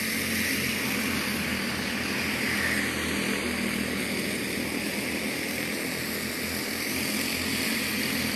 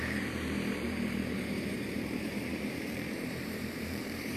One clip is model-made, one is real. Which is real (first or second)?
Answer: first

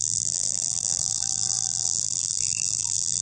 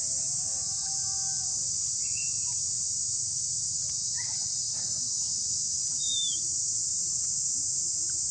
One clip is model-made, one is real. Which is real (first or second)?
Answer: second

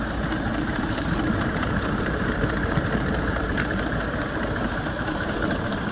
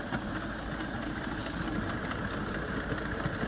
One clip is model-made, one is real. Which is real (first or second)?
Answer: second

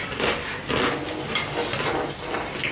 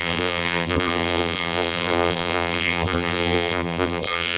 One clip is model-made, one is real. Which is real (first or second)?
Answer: first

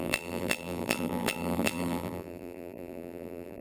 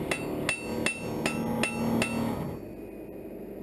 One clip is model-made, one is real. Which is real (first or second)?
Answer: second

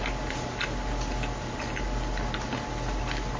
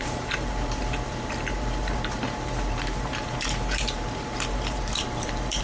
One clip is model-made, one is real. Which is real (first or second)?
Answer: first